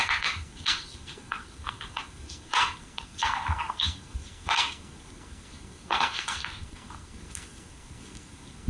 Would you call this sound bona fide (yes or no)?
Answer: no